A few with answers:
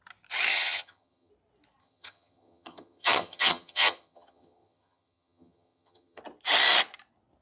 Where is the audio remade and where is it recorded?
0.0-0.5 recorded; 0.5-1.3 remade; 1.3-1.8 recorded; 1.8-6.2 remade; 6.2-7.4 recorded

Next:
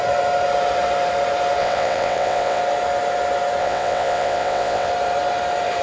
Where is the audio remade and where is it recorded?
0.0-1.6 recorded; 1.6-2.6 remade; 2.6-3.6 recorded; 3.6-4.9 remade; 4.9-5.8 recorded

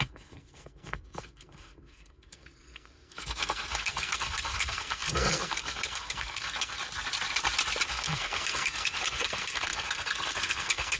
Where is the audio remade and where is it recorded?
0.0-6.8 remade; 6.8-7.9 recorded; 7.9-11.0 remade

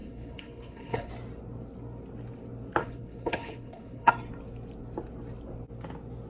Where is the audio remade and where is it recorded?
0.0-1.1 remade; 1.1-2.8 recorded; 2.8-4.1 remade; 4.1-6.3 recorded

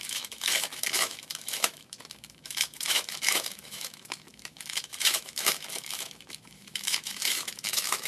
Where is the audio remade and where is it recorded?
0.0-8.1 remade

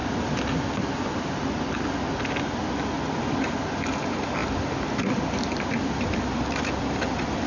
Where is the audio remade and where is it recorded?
0.0-7.5 recorded

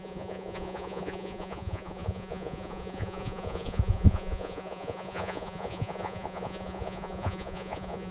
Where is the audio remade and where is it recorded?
0.0-8.1 remade

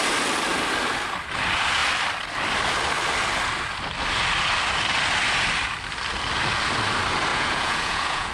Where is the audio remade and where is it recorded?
0.0-7.3 recorded; 7.3-8.3 remade